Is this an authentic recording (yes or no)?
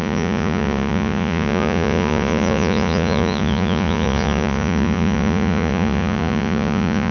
no